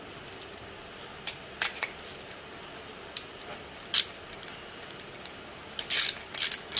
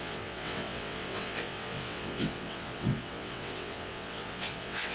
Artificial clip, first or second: second